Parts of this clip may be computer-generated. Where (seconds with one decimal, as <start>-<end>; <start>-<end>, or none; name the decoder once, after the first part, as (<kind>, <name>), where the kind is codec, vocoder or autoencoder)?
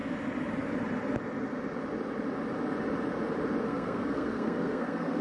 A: 3.6-5.2 (codec, SNAC)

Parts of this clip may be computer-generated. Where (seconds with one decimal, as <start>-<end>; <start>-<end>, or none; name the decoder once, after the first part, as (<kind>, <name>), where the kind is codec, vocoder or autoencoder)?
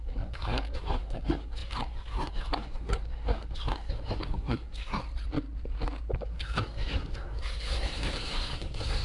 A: 0.0-5.0 (codec, SNAC); 6.2-9.0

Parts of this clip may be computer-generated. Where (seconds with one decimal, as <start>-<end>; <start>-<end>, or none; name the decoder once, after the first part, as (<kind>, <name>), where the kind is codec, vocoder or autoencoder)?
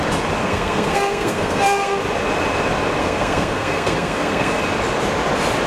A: 0.4-2.0 (codec, SNAC); 3.0-4.6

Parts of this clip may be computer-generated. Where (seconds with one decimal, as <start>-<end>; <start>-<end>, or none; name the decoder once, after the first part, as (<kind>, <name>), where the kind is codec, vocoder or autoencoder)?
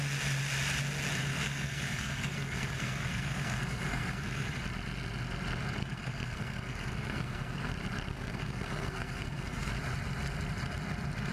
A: 1.3-4.5 (codec, SNAC); 5.8-7.7; 8.1-9.7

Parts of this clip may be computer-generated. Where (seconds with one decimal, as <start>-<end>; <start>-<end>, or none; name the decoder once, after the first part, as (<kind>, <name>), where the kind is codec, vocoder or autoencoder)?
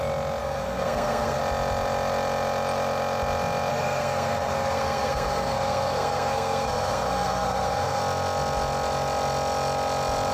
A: 0.4-1.4 (codec, SNAC); 3.7-8.0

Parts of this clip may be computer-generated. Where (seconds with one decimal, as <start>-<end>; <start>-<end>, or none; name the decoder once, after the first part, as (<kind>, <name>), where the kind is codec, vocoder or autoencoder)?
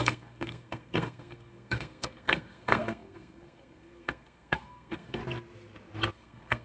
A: 0.0-5.2 (codec, SNAC); 6.1-6.6